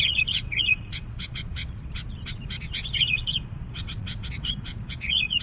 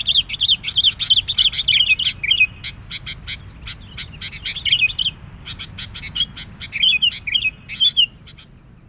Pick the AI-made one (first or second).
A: first